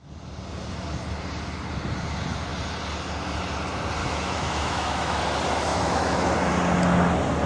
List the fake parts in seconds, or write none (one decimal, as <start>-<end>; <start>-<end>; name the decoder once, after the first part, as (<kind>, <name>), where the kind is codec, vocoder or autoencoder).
4.0-5.2 (autoencoder, DAC-VAE); 5.7-6.3